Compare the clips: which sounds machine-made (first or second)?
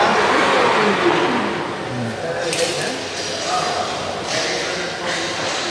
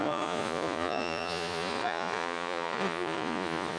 second